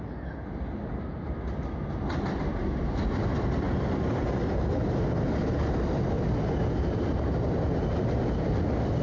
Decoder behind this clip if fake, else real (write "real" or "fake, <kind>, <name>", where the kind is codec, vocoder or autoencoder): real